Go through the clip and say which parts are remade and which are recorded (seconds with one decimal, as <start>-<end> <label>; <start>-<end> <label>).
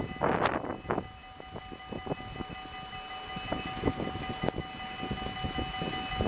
0.0-6.3 recorded